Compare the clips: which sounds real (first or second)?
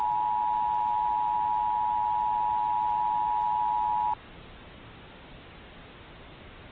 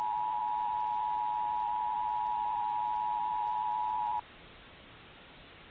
first